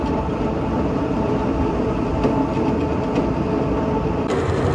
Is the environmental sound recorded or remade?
remade